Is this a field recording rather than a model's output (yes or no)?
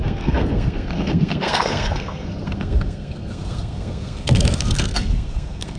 no